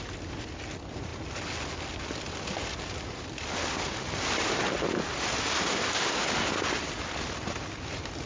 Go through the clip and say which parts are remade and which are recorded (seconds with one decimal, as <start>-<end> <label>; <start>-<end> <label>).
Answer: 0.0-8.3 recorded